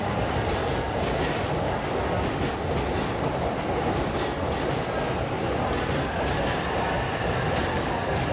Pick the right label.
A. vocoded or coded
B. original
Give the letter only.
B